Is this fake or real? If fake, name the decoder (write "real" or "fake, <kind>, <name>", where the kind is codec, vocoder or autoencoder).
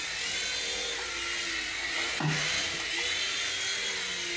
real